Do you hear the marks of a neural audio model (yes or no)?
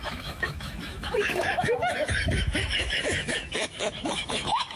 yes